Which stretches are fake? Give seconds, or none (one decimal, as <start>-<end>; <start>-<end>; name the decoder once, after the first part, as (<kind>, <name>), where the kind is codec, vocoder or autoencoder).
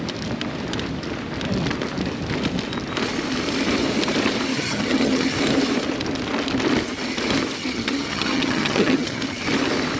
4.5-5.3 (vocoder, HiFi-GAN); 7.6-9.2